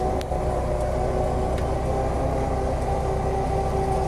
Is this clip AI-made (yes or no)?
no